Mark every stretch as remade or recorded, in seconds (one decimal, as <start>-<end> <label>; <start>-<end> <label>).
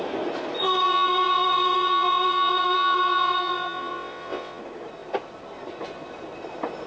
0.0-0.6 recorded; 0.6-4.6 remade; 4.6-6.9 recorded